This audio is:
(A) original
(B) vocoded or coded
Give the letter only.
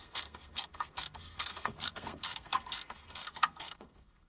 B